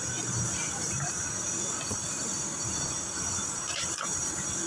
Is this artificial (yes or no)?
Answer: yes